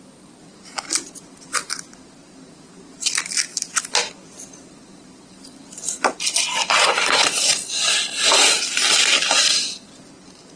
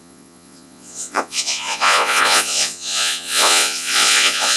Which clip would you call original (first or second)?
first